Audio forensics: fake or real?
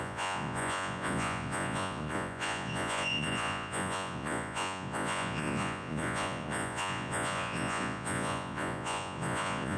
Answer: fake